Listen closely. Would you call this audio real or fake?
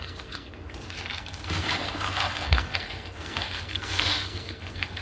fake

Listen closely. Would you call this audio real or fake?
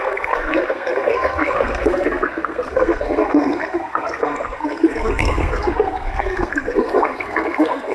fake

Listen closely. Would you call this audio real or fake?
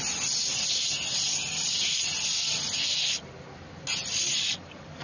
real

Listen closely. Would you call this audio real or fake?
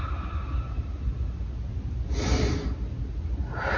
real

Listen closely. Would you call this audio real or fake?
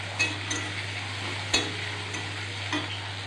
real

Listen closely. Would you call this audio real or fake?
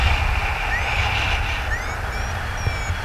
real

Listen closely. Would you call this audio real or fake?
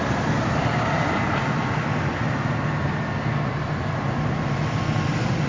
real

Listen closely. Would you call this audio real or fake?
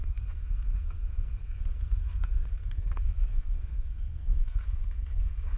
fake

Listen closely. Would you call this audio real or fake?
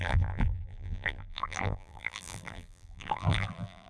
fake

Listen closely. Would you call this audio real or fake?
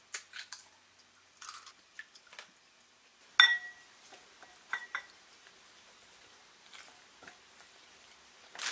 real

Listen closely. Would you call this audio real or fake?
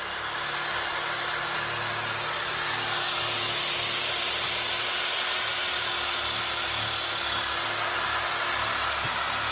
real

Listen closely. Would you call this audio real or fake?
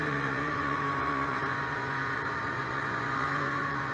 fake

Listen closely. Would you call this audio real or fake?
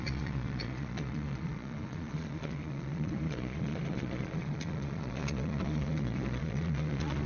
fake